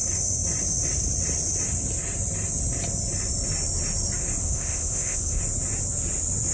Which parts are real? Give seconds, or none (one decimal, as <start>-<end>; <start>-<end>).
0.0-4.4; 5.4-6.5